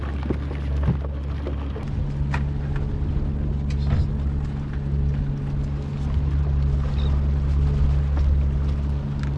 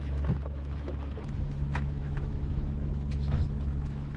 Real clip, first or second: first